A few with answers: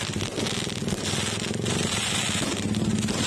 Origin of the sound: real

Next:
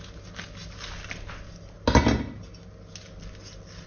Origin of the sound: real